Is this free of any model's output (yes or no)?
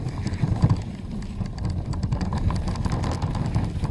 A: no